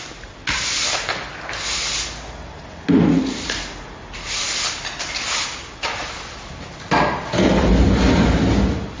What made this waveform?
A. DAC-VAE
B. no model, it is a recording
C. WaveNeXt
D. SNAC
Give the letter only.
B